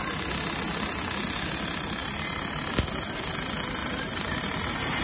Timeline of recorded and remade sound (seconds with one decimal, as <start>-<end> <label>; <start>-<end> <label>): 0.0-2.0 recorded; 2.0-2.7 remade; 2.7-3.8 recorded; 3.8-5.0 remade